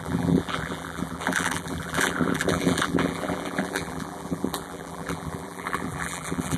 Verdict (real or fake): fake